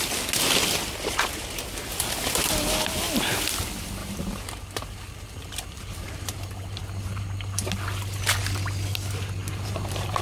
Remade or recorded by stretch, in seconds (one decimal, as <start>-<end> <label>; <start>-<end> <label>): 0.0-4.0 recorded; 4.0-7.8 remade; 7.8-9.4 recorded; 9.4-10.2 remade